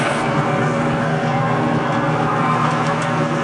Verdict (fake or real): fake